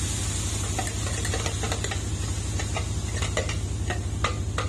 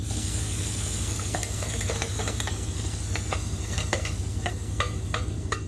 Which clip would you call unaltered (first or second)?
first